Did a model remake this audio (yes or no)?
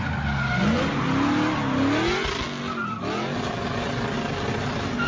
no